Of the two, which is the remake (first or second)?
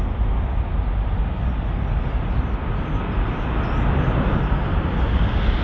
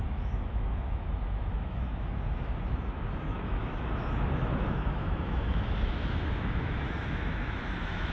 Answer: second